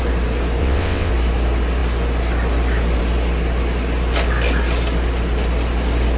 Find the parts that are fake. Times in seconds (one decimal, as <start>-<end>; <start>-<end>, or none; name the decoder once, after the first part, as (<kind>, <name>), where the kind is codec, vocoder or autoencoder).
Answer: 0.6-1.1 (vocoder, WaveNeXt)